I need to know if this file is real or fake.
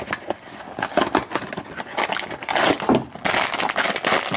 real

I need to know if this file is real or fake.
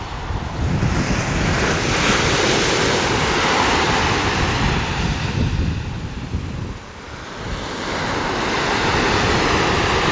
real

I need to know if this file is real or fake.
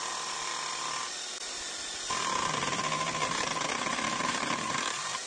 real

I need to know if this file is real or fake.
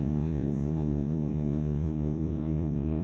fake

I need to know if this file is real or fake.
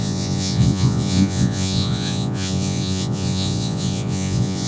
fake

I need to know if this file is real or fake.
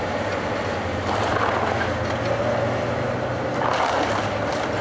real